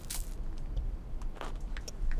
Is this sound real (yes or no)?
yes